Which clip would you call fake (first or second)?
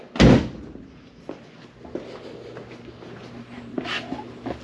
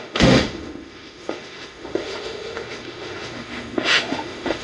second